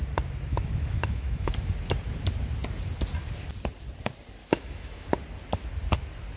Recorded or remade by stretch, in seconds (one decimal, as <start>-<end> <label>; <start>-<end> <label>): 0.0-0.5 recorded; 0.5-1.5 remade; 1.5-4.4 recorded; 4.4-5.1 remade; 5.1-6.4 recorded